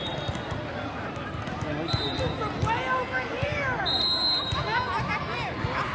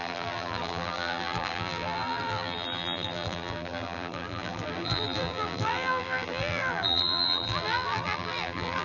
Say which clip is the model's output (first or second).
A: second